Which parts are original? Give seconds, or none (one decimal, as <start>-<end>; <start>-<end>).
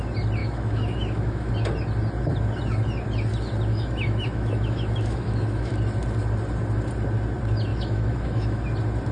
0.0-0.4; 1.5-3.7; 5.8-7.7; 8.6-9.1